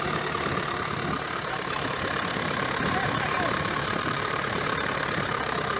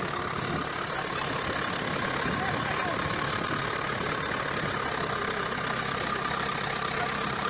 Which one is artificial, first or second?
first